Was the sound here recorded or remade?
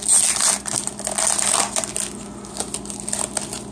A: recorded